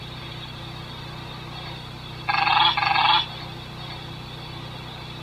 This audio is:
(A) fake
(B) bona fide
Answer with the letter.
B